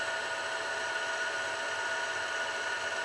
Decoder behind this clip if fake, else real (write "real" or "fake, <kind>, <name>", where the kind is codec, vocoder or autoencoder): real